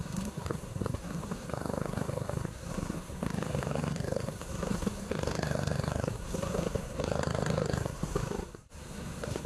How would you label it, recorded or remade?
remade